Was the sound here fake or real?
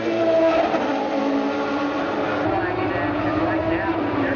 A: real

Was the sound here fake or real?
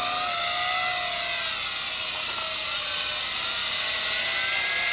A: real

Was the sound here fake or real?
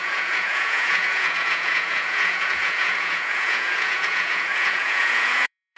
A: fake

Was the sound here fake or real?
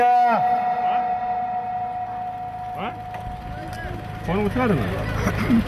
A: real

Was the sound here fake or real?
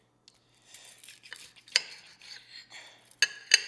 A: real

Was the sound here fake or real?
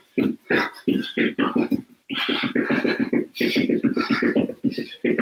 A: real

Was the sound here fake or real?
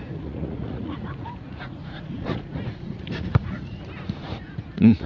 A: fake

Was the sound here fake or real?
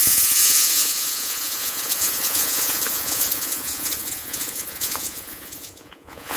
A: fake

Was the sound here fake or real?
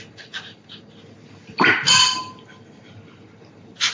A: real